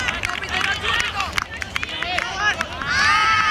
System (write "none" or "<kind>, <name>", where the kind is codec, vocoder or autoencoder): none